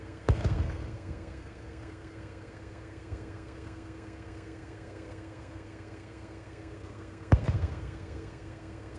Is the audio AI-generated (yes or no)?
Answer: yes